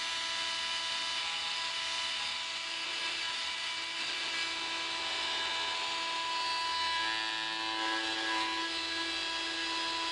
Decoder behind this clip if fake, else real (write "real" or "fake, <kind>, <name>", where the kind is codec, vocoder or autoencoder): real